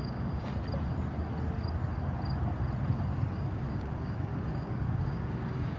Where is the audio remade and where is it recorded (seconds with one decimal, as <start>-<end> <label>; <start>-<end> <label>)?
0.0-0.5 remade; 0.5-3.3 recorded; 3.3-5.8 remade